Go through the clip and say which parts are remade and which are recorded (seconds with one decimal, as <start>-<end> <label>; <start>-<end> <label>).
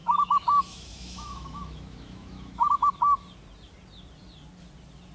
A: 0.0-3.0 remade; 3.0-5.1 recorded